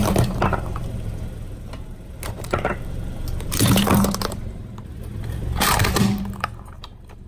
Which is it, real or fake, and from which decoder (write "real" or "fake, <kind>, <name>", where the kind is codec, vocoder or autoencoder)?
fake, vocoder, BigVGAN v2